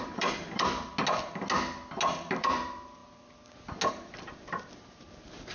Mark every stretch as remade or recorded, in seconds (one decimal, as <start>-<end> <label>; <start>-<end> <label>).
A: 0.0-0.9 remade; 0.9-2.4 recorded; 2.4-3.0 remade; 3.0-3.9 recorded; 3.9-5.5 remade